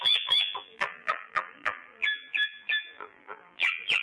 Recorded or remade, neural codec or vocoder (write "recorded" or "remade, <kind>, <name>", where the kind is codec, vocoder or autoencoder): remade, vocoder, BigVGAN v2